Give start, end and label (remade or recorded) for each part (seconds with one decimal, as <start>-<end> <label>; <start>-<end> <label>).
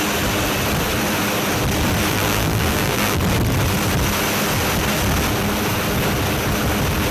0.0-2.1 recorded; 2.1-3.2 remade; 3.2-7.1 recorded